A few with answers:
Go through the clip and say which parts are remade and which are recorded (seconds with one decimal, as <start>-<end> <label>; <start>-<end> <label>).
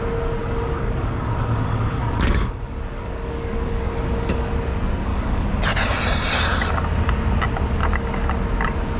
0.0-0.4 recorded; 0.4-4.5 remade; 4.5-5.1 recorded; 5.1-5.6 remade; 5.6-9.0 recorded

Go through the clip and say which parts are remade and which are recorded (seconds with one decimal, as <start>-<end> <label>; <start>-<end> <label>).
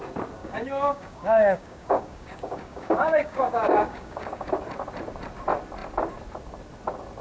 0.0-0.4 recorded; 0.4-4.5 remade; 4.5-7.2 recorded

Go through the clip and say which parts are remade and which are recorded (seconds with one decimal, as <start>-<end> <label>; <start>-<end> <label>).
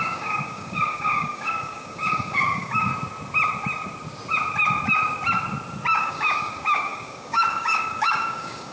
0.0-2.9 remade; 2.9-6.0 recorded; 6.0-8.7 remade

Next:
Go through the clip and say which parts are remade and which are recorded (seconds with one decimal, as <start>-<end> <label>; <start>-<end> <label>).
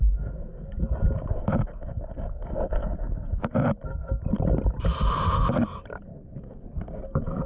0.0-2.8 recorded; 2.8-3.5 remade; 3.5-6.1 recorded; 6.1-7.0 remade; 7.0-7.5 recorded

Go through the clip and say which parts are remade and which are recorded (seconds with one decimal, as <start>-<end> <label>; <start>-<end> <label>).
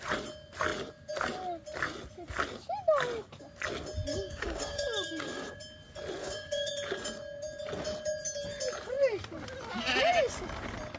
0.0-4.1 recorded; 4.1-5.5 remade; 5.5-6.2 recorded; 6.2-6.7 remade; 6.7-11.0 recorded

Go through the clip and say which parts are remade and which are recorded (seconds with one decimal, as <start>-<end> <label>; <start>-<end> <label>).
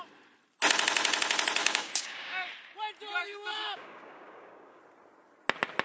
0.0-1.6 recorded; 1.6-2.5 remade; 2.5-3.2 recorded; 3.2-4.8 remade; 4.8-5.8 recorded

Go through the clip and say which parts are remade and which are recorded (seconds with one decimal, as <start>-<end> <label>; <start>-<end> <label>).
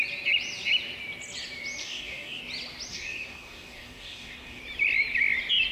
0.0-1.8 recorded; 1.8-2.4 remade; 2.4-2.9 recorded; 2.9-4.6 remade; 4.6-5.7 recorded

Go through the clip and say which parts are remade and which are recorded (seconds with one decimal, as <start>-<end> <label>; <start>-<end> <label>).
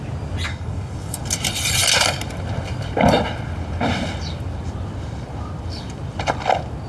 0.0-0.5 recorded; 0.5-1.2 remade; 1.2-6.9 recorded